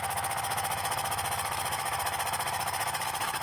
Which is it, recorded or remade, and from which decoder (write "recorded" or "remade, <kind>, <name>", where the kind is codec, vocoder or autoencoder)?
remade, autoencoder, DAC-VAE